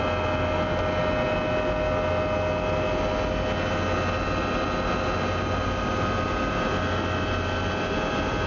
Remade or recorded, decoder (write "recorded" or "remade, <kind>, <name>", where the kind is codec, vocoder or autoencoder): recorded